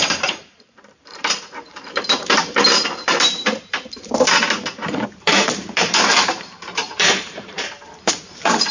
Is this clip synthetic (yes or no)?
yes